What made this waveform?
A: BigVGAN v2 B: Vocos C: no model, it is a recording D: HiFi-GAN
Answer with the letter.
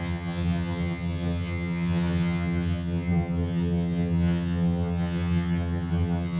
D